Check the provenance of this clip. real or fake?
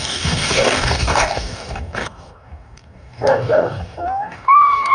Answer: fake